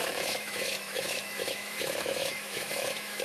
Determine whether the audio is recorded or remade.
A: remade